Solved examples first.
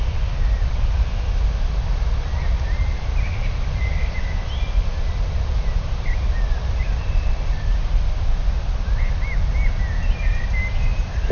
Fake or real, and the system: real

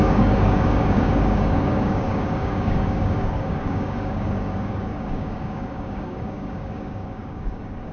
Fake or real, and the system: fake, codec, DAC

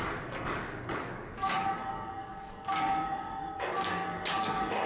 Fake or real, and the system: fake, codec, DAC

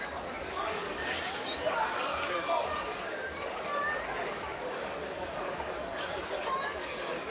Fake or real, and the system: fake, codec, DAC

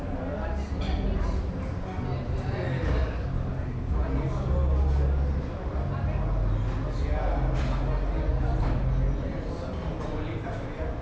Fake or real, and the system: real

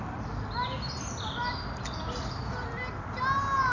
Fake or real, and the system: real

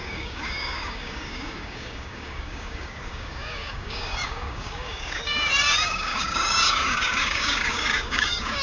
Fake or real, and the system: fake, codec, DAC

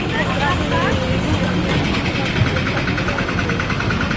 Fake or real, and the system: real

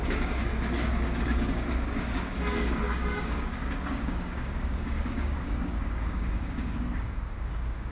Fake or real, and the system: fake, codec, DAC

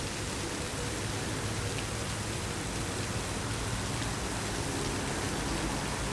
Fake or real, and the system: real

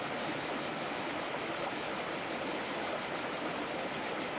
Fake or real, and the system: real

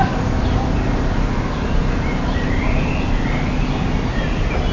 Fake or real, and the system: real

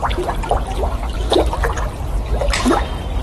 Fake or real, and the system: real